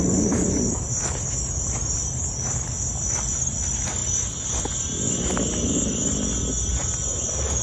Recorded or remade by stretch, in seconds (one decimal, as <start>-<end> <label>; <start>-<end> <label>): 0.0-7.6 recorded